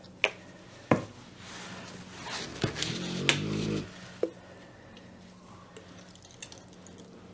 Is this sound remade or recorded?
recorded